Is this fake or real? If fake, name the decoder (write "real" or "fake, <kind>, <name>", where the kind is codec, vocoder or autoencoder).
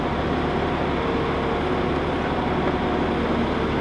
real